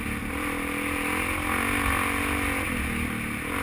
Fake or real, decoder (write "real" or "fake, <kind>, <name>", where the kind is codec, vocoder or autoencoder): real